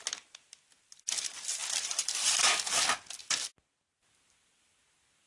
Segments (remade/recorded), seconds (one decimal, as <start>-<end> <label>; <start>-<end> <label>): 0.0-5.3 recorded